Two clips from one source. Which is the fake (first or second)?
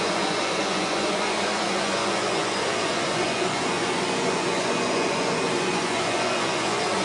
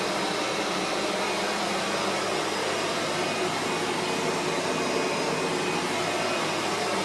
first